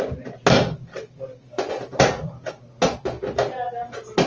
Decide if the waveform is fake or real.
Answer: real